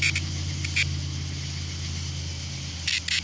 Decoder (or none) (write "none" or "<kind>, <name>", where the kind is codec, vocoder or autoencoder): none